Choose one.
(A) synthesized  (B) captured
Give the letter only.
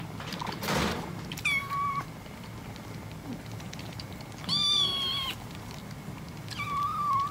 B